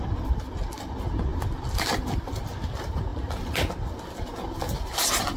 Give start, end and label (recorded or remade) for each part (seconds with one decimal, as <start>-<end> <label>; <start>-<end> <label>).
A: 0.0-5.4 recorded